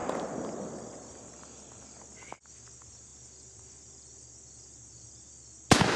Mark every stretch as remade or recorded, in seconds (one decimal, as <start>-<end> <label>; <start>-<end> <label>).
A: 0.0-6.0 recorded